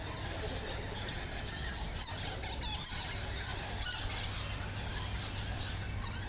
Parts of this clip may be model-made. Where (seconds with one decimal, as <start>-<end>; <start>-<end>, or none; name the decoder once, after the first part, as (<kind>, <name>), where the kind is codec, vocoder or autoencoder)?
none